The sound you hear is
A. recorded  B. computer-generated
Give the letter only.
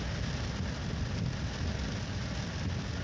A